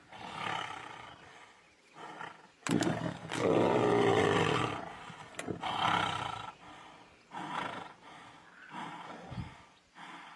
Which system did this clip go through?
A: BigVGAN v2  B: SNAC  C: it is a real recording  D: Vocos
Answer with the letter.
C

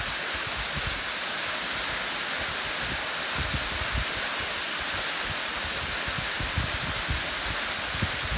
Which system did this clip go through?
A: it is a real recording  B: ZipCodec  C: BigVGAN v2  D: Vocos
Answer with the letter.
A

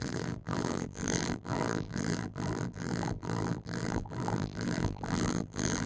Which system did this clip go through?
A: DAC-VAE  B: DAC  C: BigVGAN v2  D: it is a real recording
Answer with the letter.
C